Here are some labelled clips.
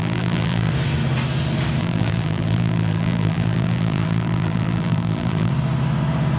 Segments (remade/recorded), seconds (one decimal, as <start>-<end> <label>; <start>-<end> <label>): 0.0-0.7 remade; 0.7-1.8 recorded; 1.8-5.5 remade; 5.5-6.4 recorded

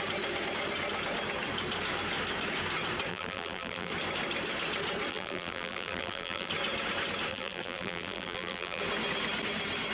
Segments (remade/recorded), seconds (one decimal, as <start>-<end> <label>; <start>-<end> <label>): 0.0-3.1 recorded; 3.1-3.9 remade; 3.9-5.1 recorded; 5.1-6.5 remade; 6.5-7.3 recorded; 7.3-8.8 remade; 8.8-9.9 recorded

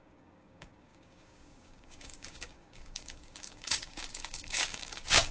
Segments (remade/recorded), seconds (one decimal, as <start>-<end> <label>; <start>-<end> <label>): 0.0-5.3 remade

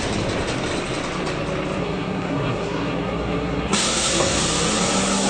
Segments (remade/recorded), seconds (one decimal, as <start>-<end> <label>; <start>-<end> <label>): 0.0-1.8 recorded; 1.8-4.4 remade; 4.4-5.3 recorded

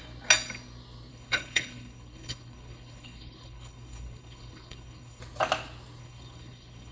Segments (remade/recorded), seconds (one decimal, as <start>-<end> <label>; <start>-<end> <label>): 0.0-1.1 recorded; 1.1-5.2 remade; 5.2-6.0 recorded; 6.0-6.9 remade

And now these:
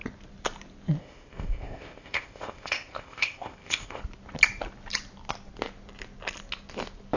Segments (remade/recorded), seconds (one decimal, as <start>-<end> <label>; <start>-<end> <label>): 0.0-1.0 recorded; 1.0-4.0 remade; 4.0-7.2 recorded

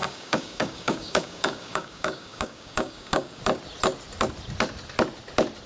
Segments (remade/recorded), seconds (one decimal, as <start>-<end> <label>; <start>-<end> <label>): 0.0-3.4 remade; 3.4-5.7 recorded

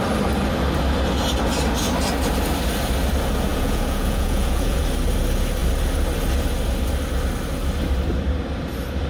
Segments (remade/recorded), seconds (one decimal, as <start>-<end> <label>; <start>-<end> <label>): 0.0-3.5 recorded; 3.5-4.8 remade; 4.8-9.1 recorded